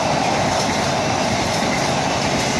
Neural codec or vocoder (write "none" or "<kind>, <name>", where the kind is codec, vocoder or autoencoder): none